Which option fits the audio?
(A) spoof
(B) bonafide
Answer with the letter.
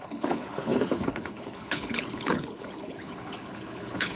A